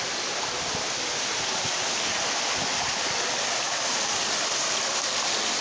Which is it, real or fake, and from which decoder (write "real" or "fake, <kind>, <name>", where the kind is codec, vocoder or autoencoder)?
real